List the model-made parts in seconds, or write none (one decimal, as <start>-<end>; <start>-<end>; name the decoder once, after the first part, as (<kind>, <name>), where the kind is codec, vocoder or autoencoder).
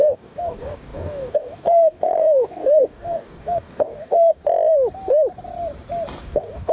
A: 0.0-4.4 (codec, DAC); 6.2-6.7